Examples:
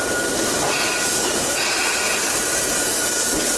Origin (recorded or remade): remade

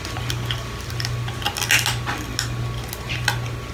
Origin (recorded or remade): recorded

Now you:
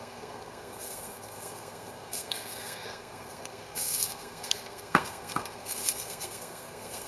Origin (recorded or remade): remade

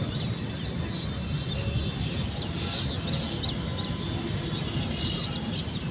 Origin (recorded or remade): recorded